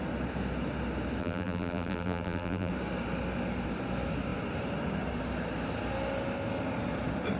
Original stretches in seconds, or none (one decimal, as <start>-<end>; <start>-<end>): 0.0-1.2; 2.7-7.4